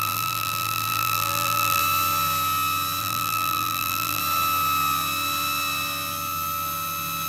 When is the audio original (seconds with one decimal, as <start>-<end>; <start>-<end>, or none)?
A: 1.8-3.0; 4.2-7.3